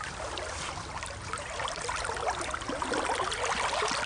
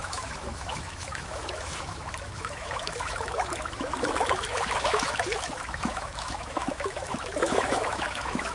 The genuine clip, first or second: first